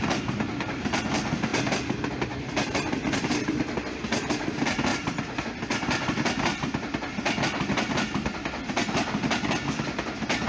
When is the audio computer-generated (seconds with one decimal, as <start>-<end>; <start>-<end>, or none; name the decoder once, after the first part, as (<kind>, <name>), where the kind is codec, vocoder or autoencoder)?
none